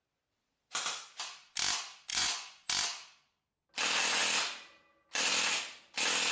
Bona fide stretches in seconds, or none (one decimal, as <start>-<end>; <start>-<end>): 0.0-2.1; 2.7-6.3

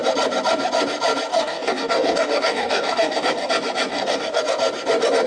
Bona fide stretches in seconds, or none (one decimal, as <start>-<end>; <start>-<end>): 0.0-1.3; 3.5-3.9; 4.4-5.3

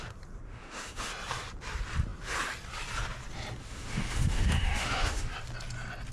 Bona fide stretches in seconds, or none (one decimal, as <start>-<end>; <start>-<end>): 0.0-0.5; 1.1-3.6; 5.3-6.1

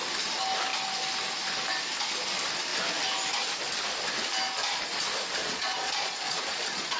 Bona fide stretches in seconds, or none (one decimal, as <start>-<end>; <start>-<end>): 0.0-5.4